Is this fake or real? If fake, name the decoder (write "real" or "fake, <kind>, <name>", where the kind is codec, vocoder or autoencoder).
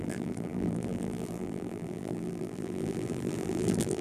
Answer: fake, vocoder, BigVGAN v2